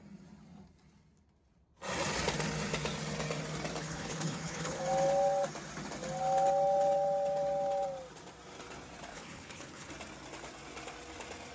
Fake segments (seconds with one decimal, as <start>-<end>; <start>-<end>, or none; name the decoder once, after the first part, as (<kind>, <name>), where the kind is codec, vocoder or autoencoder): 3.8-4.8 (codec, HILCodec); 9.1-9.9